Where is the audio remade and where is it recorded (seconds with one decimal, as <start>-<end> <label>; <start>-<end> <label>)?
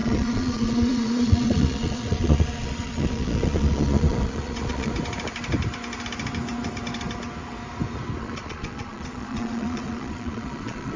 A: 0.0-4.9 remade; 4.9-8.2 recorded; 8.2-11.0 remade